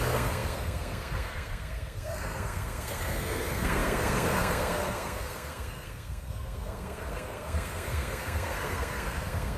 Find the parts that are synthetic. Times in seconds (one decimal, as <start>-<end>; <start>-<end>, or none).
0.0-9.6